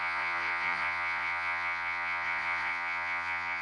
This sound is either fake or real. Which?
fake